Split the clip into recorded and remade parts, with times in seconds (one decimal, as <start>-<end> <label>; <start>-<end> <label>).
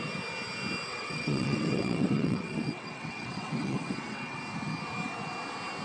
0.0-0.9 recorded; 0.9-4.4 remade; 4.4-5.8 recorded